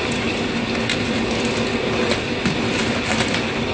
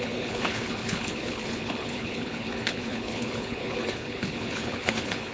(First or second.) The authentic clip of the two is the first